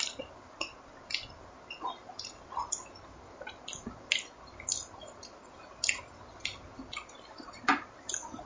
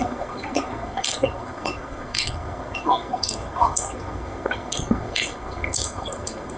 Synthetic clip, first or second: second